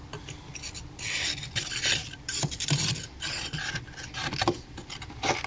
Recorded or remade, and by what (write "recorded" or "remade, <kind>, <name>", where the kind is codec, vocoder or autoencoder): recorded